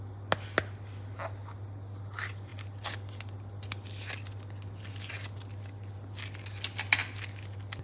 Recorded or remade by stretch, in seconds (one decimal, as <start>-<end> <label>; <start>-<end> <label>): 0.0-7.8 recorded